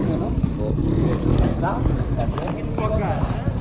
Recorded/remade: recorded